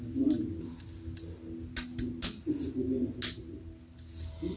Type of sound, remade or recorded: recorded